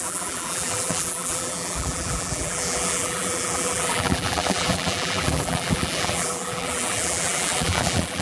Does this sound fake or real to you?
fake